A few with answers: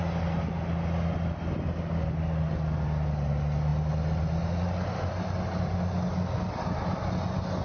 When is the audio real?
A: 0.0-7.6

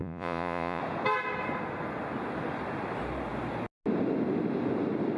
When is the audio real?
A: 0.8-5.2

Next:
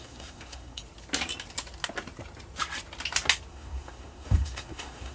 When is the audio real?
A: 0.8-3.5

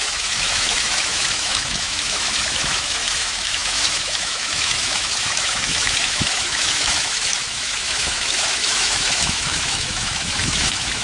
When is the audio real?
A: none

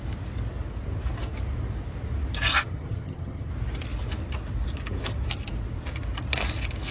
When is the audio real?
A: 0.0-2.5; 3.5-6.9

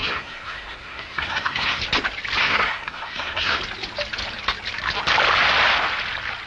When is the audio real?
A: 1.8-2.4; 3.6-6.5

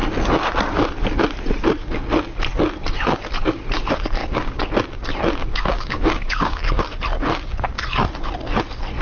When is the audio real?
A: 0.0-4.2; 4.7-5.5; 6.8-9.0

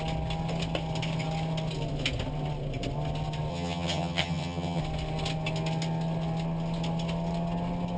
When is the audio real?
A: 0.0-3.5; 4.8-8.0